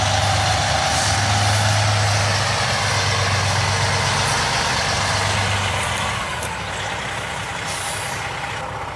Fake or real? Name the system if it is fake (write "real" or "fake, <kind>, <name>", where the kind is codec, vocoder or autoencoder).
real